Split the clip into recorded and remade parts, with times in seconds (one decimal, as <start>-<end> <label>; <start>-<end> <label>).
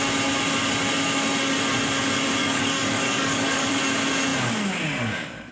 0.0-2.4 recorded; 2.4-3.7 remade; 3.7-5.5 recorded